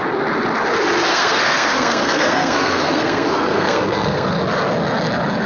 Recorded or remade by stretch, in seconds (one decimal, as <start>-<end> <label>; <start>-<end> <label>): 0.0-1.1 recorded; 1.1-4.4 remade; 4.4-5.5 recorded